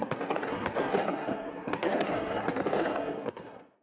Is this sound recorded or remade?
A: remade